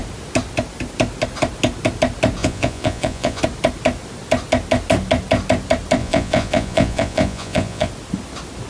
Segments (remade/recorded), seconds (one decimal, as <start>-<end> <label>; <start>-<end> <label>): 0.0-2.4 recorded; 2.4-3.4 remade; 3.4-6.0 recorded; 6.0-7.9 remade; 7.9-8.7 recorded

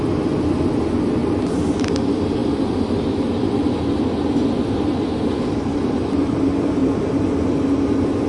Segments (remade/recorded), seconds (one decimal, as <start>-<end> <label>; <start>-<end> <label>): 0.0-8.3 recorded

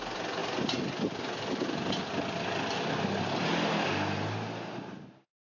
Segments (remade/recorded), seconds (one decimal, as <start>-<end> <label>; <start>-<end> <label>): 0.0-5.6 recorded

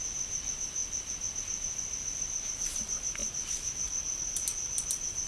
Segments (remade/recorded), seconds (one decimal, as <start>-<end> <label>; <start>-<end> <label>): 0.0-5.3 recorded

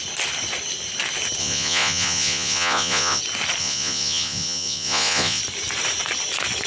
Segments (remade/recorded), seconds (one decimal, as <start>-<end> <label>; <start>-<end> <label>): 0.0-1.4 recorded; 1.4-3.2 remade; 3.2-3.6 recorded; 3.6-5.4 remade; 5.4-6.7 recorded

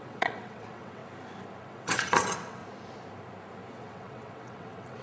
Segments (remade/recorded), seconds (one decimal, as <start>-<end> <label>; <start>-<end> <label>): 0.0-1.0 remade; 1.0-1.6 recorded; 1.6-2.6 remade; 2.6-3.7 recorded; 3.7-5.0 remade